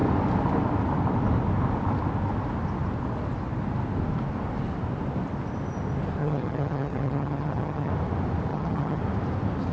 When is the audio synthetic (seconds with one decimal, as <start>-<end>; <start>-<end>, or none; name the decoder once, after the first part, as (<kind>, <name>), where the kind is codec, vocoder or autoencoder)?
6.2-7.9 (vocoder, HiFi-GAN); 8.5-9.0